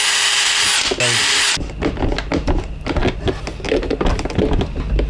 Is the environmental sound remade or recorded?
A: recorded